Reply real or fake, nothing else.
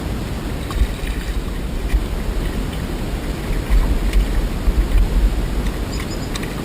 real